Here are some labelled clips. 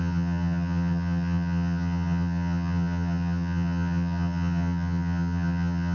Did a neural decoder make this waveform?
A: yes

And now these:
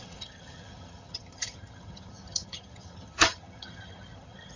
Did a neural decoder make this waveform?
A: yes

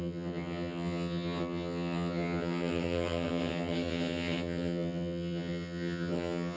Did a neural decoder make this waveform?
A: yes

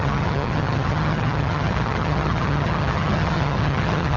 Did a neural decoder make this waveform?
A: yes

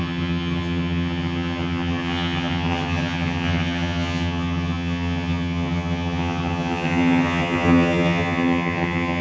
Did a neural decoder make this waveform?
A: yes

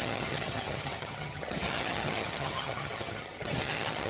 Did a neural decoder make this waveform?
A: yes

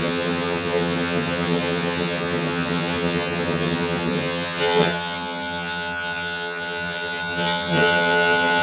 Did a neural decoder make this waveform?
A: yes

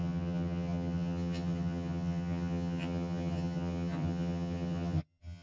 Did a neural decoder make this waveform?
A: yes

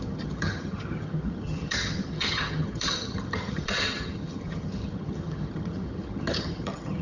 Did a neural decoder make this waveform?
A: yes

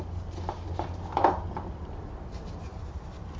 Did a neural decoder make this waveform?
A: no